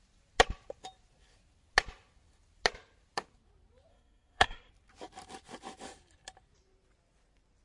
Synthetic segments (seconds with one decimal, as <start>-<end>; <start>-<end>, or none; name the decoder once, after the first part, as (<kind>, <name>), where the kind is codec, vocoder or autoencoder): 3.9-4.7 (codec, SNAC)